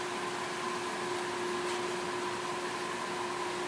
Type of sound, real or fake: real